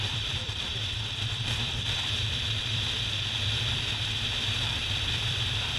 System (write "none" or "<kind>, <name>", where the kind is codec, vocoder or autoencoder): vocoder, BigVGAN v2